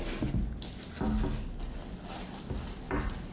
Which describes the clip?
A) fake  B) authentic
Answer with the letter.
B